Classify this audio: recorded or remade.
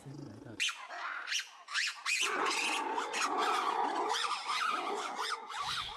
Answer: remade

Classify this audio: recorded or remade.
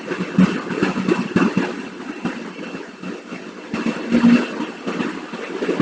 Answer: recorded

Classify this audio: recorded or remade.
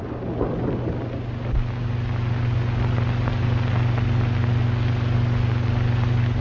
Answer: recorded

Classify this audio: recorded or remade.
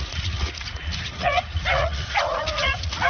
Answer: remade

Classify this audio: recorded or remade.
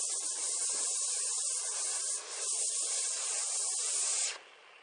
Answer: recorded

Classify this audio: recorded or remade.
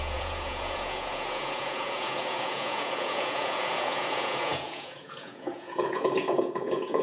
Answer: remade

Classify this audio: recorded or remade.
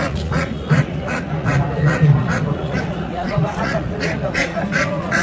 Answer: remade